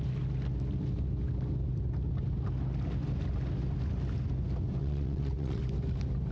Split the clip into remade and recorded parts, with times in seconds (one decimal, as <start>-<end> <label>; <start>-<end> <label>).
0.0-4.8 recorded; 4.8-5.6 remade; 5.6-6.3 recorded